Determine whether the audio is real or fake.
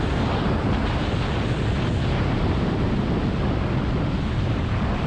real